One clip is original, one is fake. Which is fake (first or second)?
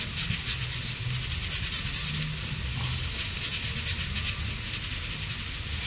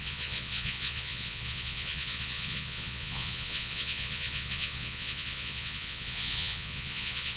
second